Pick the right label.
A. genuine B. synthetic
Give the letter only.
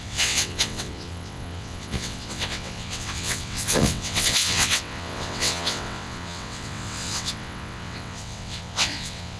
B